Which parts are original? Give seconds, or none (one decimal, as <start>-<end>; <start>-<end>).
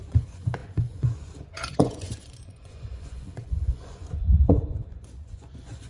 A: none